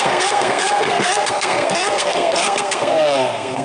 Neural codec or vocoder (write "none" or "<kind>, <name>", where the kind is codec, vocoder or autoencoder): codec, SNAC